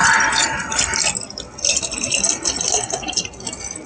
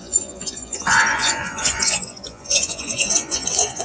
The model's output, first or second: second